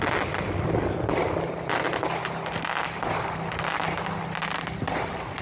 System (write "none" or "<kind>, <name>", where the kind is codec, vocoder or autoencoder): none